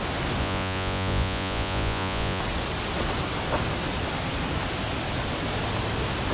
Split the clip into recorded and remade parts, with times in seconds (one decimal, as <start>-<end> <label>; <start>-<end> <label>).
0.0-0.4 recorded; 0.4-2.4 remade; 2.4-6.3 recorded